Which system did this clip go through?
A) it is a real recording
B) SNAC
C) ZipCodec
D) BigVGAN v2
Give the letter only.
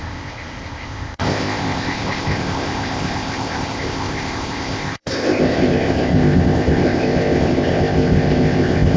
C